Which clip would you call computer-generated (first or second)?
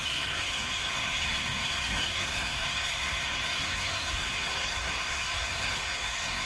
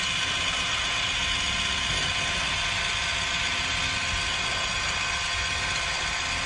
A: first